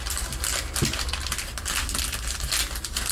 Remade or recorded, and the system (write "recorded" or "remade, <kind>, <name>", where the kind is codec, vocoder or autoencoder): recorded